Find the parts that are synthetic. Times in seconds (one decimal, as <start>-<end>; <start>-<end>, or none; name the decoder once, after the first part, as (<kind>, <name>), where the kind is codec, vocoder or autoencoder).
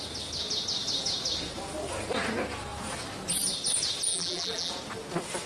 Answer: 4.1-4.7 (vocoder, BigVGAN v2)